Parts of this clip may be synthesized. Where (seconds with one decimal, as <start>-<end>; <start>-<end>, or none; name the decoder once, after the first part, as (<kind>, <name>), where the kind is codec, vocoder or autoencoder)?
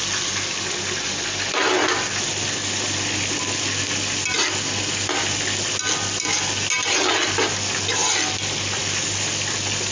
none